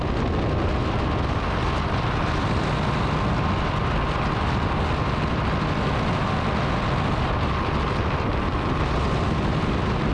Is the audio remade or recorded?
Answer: recorded